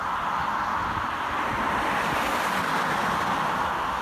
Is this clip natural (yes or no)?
yes